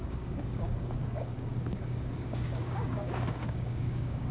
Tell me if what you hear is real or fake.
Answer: fake